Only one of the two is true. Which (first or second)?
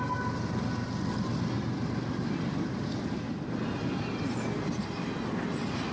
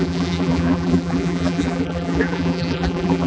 first